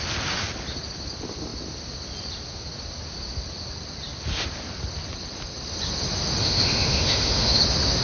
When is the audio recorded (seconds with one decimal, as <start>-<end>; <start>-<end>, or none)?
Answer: 0.0-6.4; 7.6-8.0